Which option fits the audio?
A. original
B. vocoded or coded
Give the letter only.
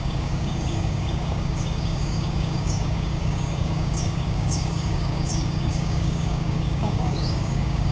B